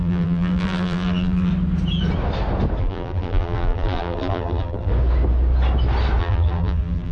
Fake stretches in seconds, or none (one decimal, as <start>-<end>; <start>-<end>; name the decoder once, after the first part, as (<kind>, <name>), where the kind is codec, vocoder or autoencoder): 0.0-1.5 (vocoder, BigVGAN v2); 2.8-4.9; 6.2-7.1